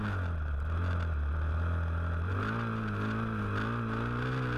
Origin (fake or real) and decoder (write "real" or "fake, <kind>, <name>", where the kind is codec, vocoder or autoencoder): real